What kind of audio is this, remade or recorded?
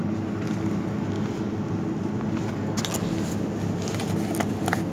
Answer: recorded